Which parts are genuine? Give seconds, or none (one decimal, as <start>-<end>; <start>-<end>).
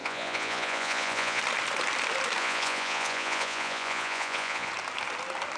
1.4-2.4; 4.7-5.6